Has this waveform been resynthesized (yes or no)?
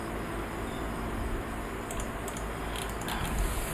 no